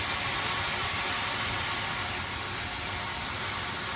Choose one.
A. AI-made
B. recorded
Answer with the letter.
B